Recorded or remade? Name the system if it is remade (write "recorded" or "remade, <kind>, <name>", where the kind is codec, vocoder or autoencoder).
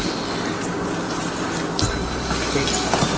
recorded